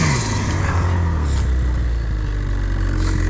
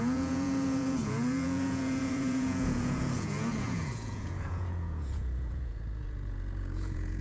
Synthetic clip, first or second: second